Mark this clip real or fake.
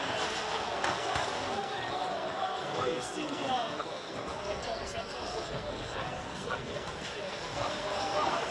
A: fake